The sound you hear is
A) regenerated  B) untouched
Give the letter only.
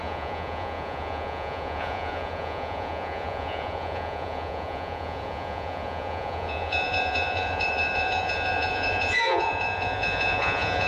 A